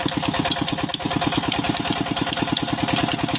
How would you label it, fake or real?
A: real